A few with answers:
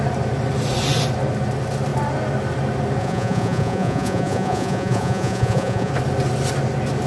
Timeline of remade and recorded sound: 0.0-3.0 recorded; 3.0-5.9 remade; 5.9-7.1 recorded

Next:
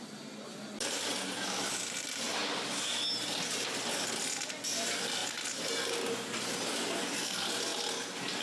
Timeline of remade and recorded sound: 0.0-8.4 recorded

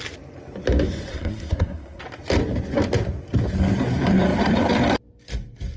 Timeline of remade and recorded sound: 0.0-1.1 recorded; 1.1-2.0 remade; 2.0-5.8 recorded

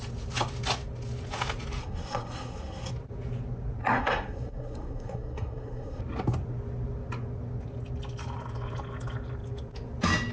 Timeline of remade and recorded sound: 0.0-1.8 recorded; 1.8-2.9 remade; 2.9-3.8 recorded; 3.8-6.0 remade; 6.0-10.3 recorded

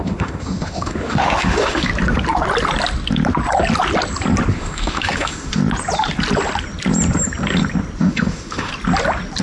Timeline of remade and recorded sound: 0.0-1.9 remade; 1.9-4.5 recorded; 4.5-5.6 remade; 5.6-8.0 recorded; 8.0-8.7 remade; 8.7-9.4 recorded